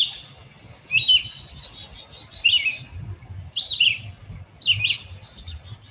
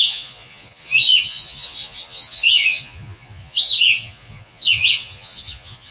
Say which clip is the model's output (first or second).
second